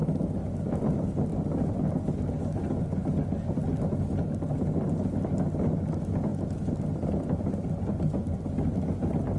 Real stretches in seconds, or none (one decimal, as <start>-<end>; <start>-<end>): 0.0-9.4